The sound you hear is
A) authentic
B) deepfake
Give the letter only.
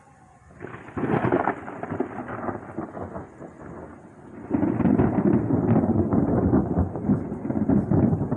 A